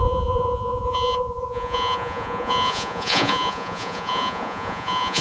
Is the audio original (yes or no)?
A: no